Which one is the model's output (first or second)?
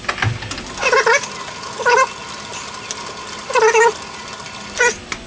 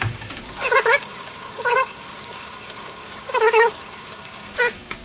second